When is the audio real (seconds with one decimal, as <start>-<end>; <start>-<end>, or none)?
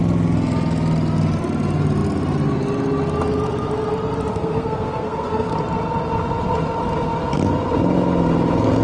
0.0-4.3; 5.5-8.8